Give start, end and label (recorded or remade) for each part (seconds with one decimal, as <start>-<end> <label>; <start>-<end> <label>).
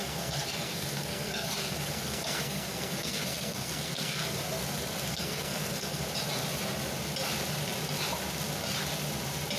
0.0-4.4 remade; 4.4-5.1 recorded; 5.1-6.0 remade; 6.0-9.6 recorded